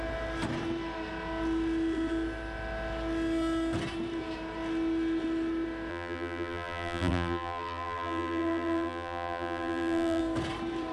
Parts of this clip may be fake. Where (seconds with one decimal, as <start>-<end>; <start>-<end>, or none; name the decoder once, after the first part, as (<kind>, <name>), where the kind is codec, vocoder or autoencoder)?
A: 5.9-10.2 (vocoder, BigVGAN v2)

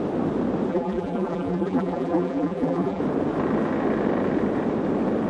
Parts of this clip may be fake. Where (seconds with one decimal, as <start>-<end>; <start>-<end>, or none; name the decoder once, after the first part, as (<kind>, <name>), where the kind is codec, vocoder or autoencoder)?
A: 0.7-3.0 (vocoder, BigVGAN v2)

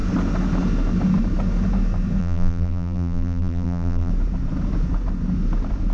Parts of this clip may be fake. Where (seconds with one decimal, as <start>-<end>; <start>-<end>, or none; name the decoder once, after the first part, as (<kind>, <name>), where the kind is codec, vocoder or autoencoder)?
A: 2.2-4.1 (vocoder, BigVGAN v2)